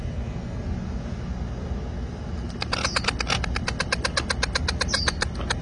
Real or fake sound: real